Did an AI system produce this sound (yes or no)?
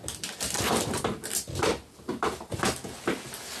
no